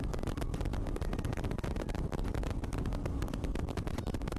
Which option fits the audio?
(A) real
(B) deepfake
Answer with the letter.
A